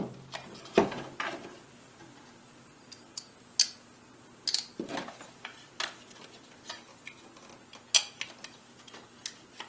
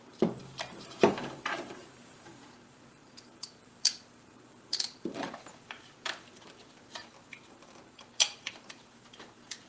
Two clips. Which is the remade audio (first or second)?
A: second